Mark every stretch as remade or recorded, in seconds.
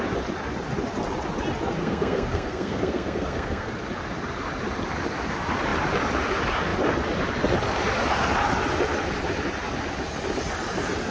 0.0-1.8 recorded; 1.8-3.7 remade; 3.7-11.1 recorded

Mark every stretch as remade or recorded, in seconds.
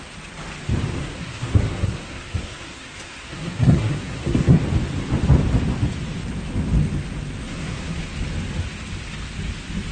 0.0-1.0 recorded; 1.0-4.6 remade; 4.6-7.4 recorded; 7.4-8.0 remade; 8.0-9.9 recorded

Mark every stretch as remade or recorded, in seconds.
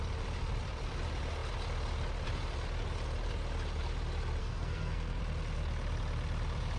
0.0-4.4 recorded; 4.4-5.2 remade; 5.2-6.8 recorded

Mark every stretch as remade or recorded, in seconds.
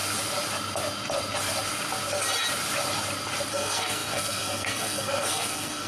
0.0-3.5 recorded; 3.5-5.9 remade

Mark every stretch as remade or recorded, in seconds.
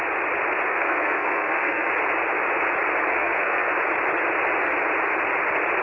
0.0-0.7 recorded; 0.7-1.9 remade; 1.9-3.1 recorded; 3.1-3.7 remade; 3.7-5.8 recorded